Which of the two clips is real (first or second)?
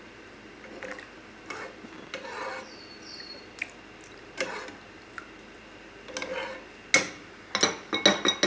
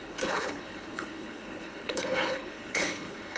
first